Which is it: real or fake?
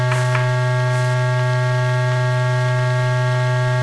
real